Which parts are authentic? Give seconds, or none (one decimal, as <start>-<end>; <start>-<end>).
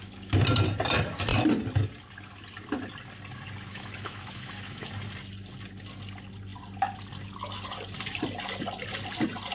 0.0-3.7; 4.9-9.5